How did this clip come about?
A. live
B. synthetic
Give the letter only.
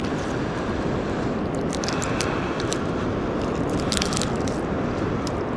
A